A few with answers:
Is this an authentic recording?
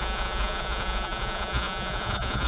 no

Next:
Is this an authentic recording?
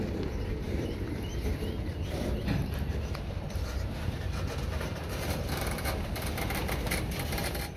no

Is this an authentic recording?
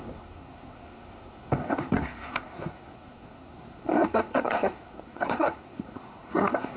no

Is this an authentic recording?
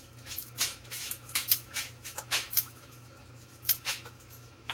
no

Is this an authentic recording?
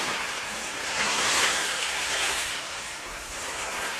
no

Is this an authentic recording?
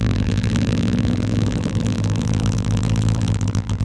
no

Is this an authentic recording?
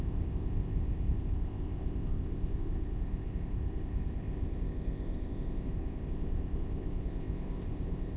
no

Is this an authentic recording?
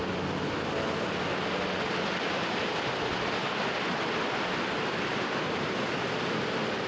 yes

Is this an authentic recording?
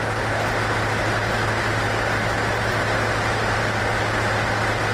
yes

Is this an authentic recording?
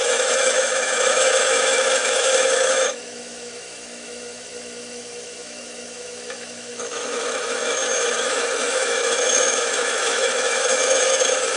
no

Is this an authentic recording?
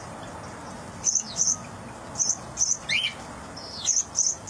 yes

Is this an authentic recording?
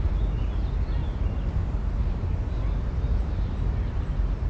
yes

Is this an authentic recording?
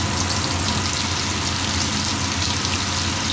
yes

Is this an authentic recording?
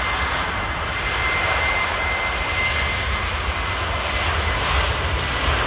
yes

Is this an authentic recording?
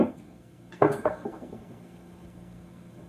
no